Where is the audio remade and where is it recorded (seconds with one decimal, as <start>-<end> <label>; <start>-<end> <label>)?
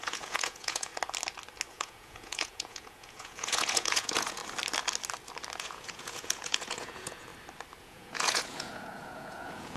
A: 0.0-0.9 remade; 0.9-1.7 recorded; 1.7-4.4 remade; 4.4-5.6 recorded; 5.6-7.3 remade; 7.3-7.8 recorded; 7.8-9.8 remade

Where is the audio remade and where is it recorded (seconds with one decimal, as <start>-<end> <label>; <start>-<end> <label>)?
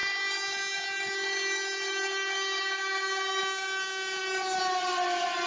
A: 0.0-5.5 recorded